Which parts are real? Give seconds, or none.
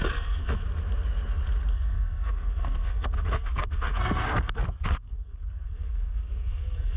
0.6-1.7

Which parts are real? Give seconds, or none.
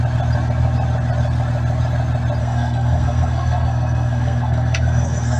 0.0-2.4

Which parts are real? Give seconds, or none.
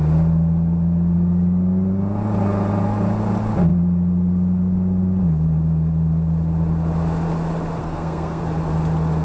0.0-7.8; 8.4-9.2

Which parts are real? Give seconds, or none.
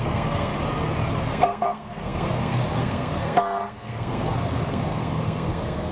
0.5-1.2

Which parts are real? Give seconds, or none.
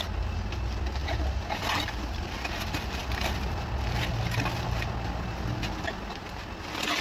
0.0-7.0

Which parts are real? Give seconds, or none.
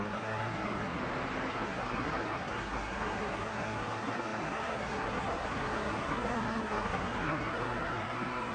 1.0-1.5